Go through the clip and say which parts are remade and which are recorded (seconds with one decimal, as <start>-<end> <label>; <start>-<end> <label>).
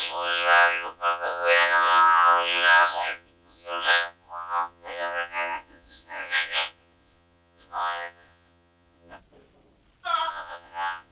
0.0-9.2 remade; 9.2-10.3 recorded; 10.3-11.1 remade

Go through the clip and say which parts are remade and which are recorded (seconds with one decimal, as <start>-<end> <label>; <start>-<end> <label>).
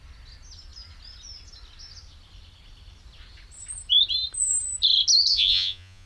0.0-5.3 recorded; 5.3-6.1 remade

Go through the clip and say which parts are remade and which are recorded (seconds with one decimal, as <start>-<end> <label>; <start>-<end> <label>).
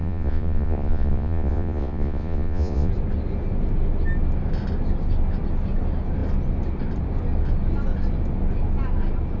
0.0-2.9 remade; 2.9-9.4 recorded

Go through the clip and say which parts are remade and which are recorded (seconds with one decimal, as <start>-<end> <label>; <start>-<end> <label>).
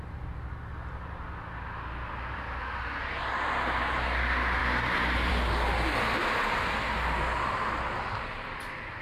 0.0-9.0 recorded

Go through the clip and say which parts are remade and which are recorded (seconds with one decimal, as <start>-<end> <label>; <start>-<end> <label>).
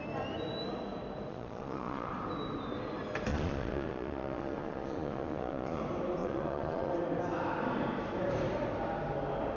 0.0-1.3 recorded; 1.3-2.1 remade; 2.1-3.3 recorded; 3.3-5.8 remade; 5.8-6.2 recorded; 6.2-6.9 remade; 6.9-9.6 recorded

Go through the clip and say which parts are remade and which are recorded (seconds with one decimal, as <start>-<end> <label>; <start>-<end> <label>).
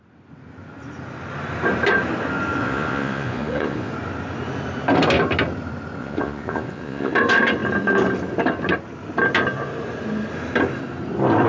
0.0-2.6 recorded; 2.6-3.9 remade; 3.9-6.0 recorded; 6.0-7.1 remade; 7.1-11.5 recorded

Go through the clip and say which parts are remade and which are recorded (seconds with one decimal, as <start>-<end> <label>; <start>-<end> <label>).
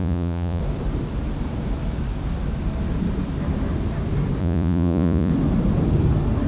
0.0-0.6 remade; 0.6-4.4 recorded; 4.4-5.3 remade; 5.3-6.5 recorded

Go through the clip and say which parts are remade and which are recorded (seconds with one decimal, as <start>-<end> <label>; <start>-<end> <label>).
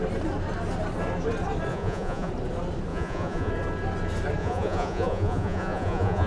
0.0-1.7 recorded; 1.7-2.3 remade; 2.3-2.9 recorded; 2.9-3.5 remade; 3.5-4.4 recorded; 4.4-6.3 remade